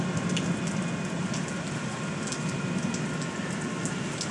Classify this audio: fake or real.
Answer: real